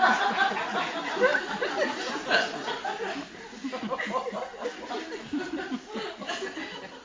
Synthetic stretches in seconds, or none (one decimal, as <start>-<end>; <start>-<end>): none